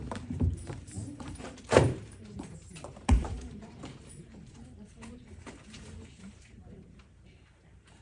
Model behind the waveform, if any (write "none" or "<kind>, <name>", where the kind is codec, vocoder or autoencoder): vocoder, BigVGAN v2